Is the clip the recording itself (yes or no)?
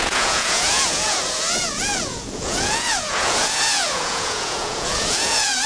no